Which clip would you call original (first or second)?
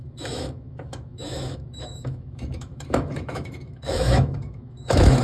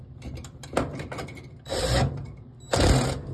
second